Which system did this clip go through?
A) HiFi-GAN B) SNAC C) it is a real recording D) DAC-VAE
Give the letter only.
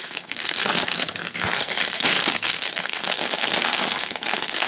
B